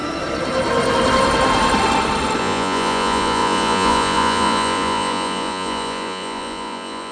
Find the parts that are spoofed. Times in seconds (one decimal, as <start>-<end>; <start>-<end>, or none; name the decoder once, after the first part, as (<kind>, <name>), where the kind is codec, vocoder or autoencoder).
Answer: 2.4-7.1 (vocoder, Vocos)

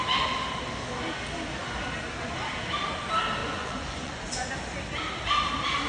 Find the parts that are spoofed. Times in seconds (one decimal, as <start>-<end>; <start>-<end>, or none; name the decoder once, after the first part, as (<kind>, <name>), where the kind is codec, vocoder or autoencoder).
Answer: 3.4-4.5 (vocoder, Vocos)

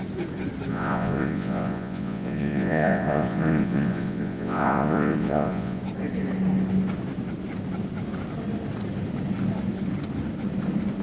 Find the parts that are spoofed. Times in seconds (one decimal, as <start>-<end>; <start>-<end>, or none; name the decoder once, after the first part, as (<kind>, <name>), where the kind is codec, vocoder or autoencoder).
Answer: 0.7-5.8 (vocoder, Vocos)

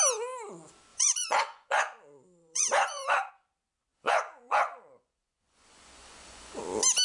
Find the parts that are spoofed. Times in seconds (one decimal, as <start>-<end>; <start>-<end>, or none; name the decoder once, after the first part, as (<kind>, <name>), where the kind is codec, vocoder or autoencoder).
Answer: 0.9-3.3 (vocoder, Vocos); 3.9-6.6

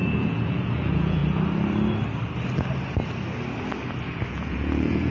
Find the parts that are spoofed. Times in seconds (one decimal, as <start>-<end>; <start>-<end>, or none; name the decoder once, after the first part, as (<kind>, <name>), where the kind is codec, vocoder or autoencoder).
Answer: 0.0-1.2 (vocoder, Vocos); 4.3-5.1

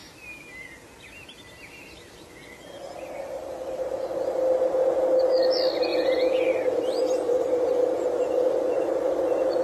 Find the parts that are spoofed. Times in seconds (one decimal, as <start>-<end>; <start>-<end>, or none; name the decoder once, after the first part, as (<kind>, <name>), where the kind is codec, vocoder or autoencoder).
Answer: 5.9-6.4 (vocoder, Vocos)

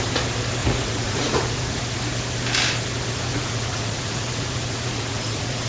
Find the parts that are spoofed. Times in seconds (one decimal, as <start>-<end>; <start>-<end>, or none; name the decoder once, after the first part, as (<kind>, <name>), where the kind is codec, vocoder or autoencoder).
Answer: 0.6-1.8 (vocoder, Vocos); 3.3-5.7